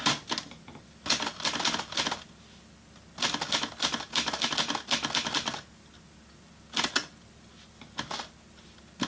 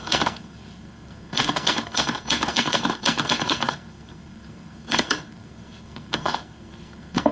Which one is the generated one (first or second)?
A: second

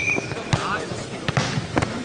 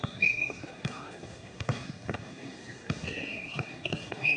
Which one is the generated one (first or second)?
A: second